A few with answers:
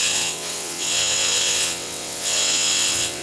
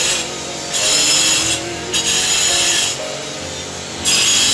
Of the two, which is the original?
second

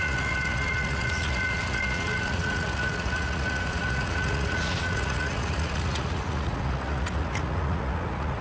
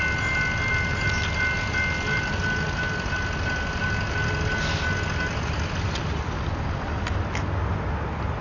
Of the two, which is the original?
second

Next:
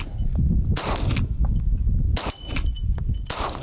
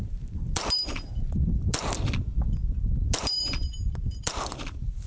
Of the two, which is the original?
first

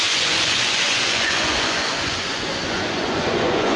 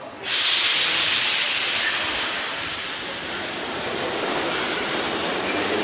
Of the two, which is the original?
second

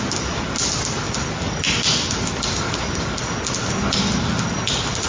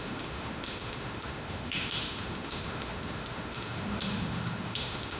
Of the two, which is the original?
first